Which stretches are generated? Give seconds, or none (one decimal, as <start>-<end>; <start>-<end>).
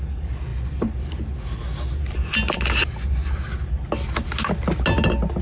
none